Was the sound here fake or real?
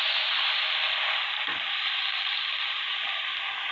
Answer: real